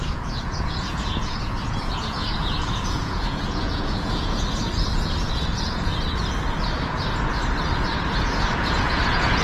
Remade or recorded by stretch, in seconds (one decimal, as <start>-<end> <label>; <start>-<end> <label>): 0.0-5.9 remade; 5.9-6.7 recorded; 6.7-7.4 remade; 7.4-8.1 recorded; 8.1-9.4 remade